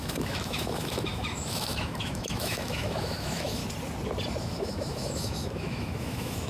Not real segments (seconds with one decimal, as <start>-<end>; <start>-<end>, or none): 0.0-3.6; 4.4-6.5

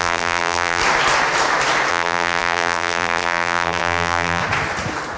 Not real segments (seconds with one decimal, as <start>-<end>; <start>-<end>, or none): 0.0-0.8; 1.9-4.4

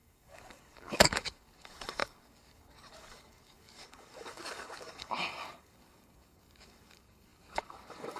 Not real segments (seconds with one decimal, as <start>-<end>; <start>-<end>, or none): 0.0-8.2

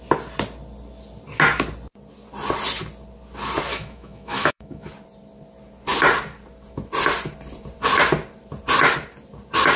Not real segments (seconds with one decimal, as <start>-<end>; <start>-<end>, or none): 3.7-4.9

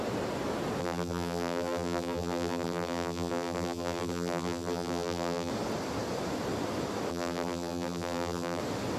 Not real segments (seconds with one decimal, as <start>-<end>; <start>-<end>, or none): 0.8-5.5; 7.1-8.6

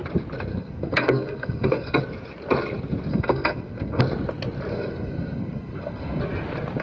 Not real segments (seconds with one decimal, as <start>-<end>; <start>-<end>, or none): 0.5-2.0; 3.1-4.0; 4.7-6.2

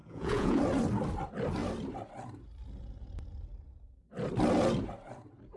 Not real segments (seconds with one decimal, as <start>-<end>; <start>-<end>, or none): 0.0-0.6